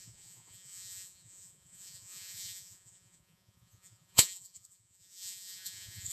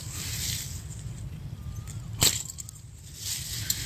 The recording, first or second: second